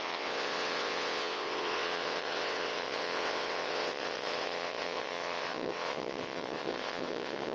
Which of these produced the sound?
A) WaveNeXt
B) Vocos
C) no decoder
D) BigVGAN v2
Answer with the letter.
A